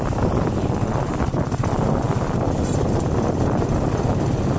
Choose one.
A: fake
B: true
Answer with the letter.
B